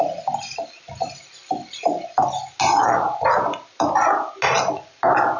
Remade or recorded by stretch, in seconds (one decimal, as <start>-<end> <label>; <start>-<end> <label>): 0.0-5.4 recorded